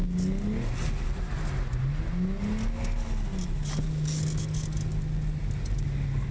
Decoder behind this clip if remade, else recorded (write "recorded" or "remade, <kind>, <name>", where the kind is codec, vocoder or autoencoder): recorded